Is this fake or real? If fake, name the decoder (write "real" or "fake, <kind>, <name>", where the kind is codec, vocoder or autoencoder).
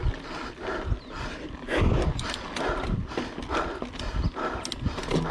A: real